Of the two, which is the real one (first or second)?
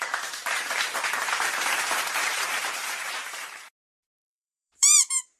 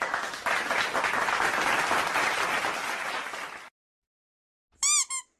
second